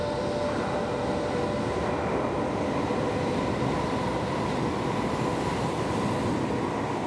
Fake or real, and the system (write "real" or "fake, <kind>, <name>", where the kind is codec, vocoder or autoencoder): real